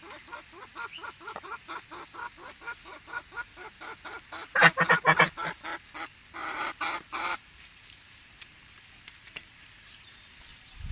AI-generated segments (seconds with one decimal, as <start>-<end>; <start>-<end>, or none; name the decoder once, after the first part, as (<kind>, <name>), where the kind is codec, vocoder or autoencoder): 6.4-10.9 (vocoder, BigVGAN v2)